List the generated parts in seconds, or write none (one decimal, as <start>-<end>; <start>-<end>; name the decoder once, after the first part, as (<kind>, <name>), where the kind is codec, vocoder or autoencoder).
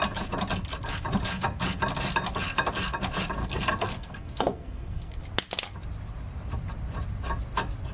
3.4-5.2 (codec, SNAC)